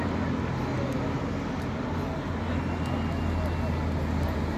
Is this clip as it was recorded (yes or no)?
yes